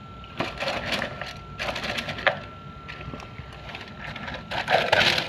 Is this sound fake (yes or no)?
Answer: no